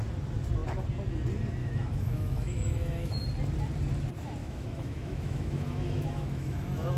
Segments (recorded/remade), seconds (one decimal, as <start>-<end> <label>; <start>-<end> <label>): 0.0-1.6 recorded; 1.6-3.2 remade; 3.2-4.4 recorded; 4.4-7.0 remade